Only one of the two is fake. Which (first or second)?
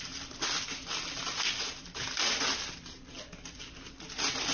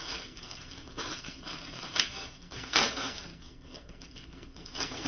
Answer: second